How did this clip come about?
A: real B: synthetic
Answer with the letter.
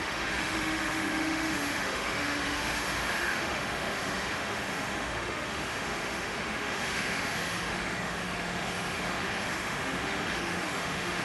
B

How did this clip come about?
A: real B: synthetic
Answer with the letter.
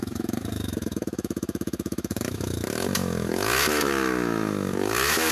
B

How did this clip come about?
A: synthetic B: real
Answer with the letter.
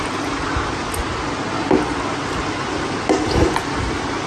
B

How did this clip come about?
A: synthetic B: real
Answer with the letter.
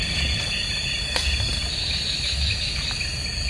B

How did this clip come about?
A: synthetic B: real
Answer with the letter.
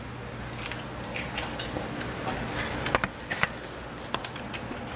B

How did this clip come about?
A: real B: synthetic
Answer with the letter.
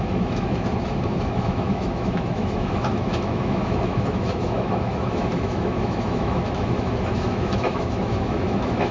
B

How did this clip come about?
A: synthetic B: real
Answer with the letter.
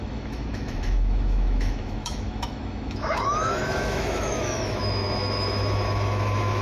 A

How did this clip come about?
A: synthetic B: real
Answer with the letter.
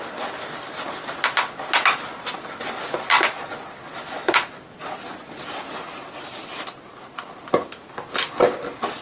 B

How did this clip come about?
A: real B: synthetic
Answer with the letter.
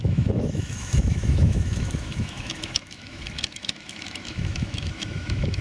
B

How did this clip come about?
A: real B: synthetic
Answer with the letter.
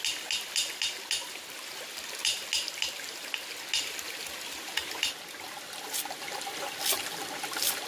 A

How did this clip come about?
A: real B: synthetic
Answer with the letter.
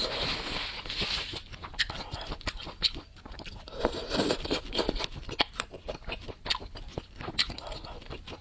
A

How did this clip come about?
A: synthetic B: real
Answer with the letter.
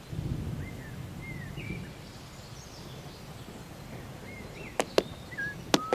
B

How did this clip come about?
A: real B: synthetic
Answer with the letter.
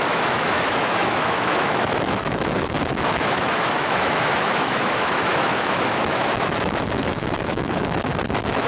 B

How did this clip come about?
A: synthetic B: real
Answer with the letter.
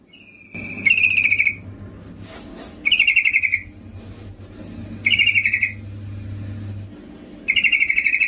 B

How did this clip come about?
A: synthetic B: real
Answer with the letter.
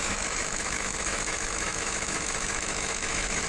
A